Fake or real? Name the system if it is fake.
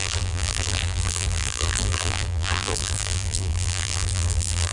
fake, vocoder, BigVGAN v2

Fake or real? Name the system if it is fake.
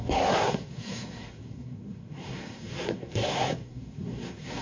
fake, codec, SNAC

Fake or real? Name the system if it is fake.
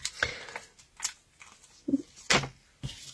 real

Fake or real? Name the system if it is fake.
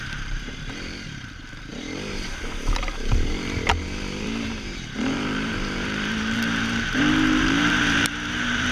fake, vocoder, BigVGAN v2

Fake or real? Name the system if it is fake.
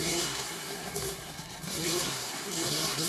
fake, codec, SNAC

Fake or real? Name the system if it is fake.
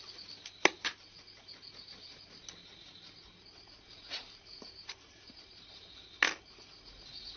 real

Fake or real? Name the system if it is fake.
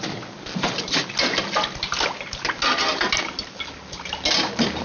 real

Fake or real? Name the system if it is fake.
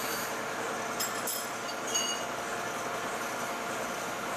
real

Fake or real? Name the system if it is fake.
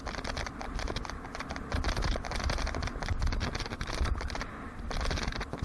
real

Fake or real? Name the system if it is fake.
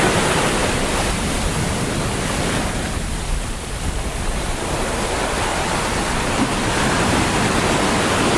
real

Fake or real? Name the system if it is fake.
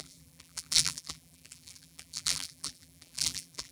fake, vocoder, BigVGAN v2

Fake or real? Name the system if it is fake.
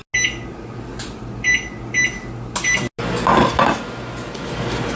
real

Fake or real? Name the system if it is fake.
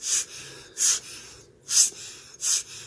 real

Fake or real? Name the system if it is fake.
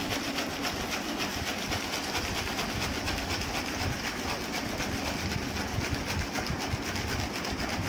real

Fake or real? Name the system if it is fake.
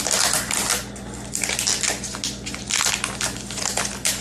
real